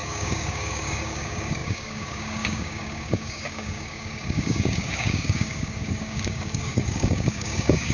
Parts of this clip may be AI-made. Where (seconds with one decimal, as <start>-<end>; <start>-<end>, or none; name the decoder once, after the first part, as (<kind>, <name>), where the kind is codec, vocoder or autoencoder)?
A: 0.0-7.9 (codec, DAC)